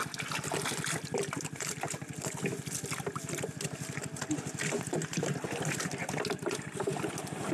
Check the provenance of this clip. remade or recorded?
recorded